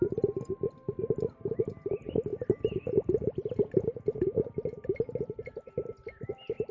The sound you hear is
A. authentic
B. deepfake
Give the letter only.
A